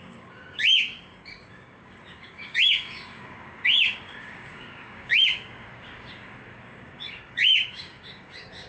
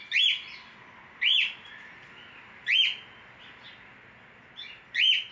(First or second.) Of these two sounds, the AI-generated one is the first